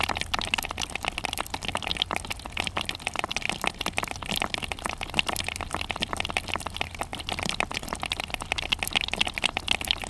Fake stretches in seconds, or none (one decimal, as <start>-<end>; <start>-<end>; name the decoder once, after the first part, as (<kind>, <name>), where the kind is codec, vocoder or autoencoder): none